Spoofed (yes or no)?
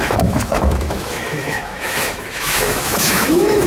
yes